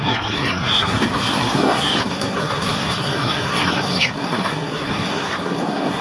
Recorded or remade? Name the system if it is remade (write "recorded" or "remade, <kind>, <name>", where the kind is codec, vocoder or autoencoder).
remade, codec, SNAC